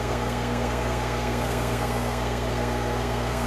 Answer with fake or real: fake